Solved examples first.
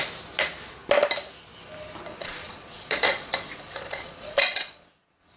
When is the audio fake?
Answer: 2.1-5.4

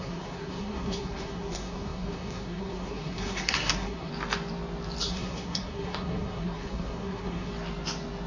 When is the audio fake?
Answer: 0.0-4.1; 5.0-7.5

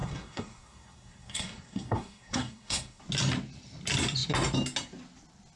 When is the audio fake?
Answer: 0.0-3.0